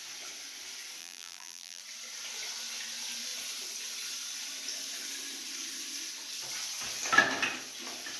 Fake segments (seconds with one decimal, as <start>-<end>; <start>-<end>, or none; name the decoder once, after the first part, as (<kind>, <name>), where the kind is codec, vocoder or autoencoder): 1.0-1.8 (vocoder, BigVGAN v2)